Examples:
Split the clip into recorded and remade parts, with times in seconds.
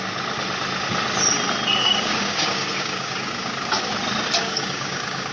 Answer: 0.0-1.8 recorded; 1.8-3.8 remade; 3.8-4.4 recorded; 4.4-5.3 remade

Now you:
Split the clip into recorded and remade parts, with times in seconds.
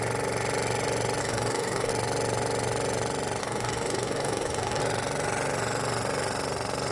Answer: 0.0-1.2 recorded; 1.2-1.9 remade; 1.9-3.4 recorded; 3.4-4.8 remade; 4.8-6.9 recorded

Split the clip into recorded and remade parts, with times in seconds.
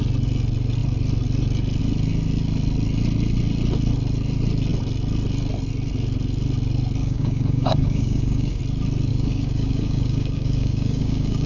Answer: 0.0-7.0 recorded; 7.0-8.6 remade; 8.6-9.1 recorded; 9.1-11.5 remade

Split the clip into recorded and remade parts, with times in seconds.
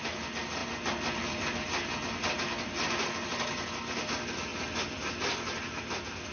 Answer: 0.0-6.3 recorded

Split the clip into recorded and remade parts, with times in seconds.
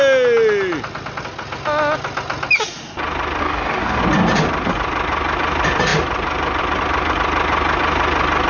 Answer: 0.0-3.4 recorded; 3.4-4.0 remade; 4.0-8.5 recorded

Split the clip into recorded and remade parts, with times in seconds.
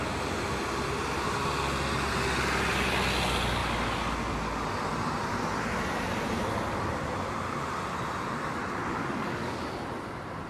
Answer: 0.0-9.0 recorded; 9.0-9.6 remade; 9.6-10.5 recorded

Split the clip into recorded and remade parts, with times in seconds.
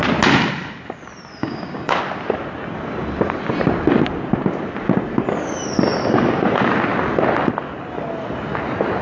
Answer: 0.0-1.4 recorded; 1.4-2.0 remade; 2.0-9.0 recorded